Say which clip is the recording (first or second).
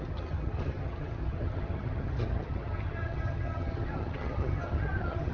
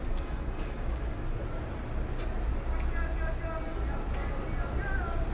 second